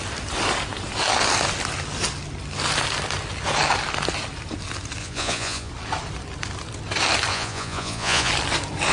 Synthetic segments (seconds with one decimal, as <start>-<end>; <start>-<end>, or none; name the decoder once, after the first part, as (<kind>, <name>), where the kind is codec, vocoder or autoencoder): 5.0-5.7 (vocoder, Vocos); 7.3-8.3